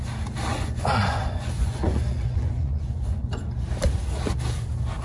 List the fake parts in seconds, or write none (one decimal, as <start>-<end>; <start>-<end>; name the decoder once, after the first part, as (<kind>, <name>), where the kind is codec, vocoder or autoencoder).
0.5-3.5 (vocoder, Vocos)